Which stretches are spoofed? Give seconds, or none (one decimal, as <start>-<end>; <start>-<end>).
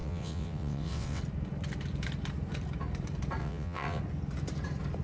0.0-1.2; 3.4-4.0